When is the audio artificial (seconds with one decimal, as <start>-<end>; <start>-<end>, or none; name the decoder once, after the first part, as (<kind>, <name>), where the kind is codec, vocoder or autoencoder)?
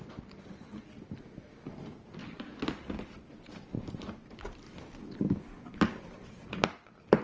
2.2-6.5 (vocoder, BigVGAN v2)